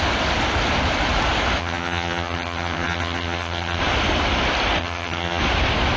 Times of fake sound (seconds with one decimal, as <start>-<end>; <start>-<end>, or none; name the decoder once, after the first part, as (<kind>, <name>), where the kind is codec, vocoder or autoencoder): 1.6-3.8 (vocoder, HiFi-GAN); 4.8-5.4